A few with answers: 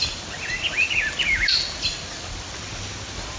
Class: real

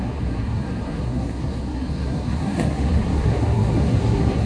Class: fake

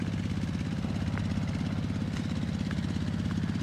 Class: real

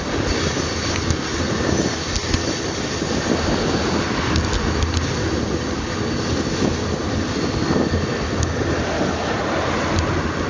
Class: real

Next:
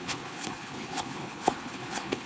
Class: fake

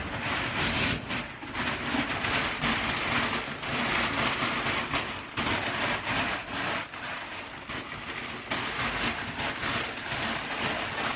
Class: real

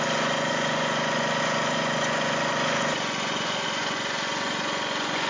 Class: fake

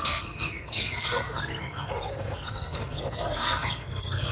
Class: fake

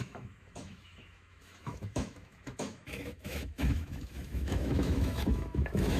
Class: fake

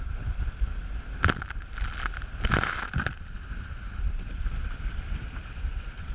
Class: real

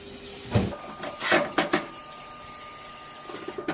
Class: real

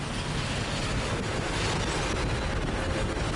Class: real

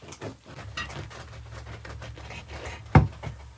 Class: real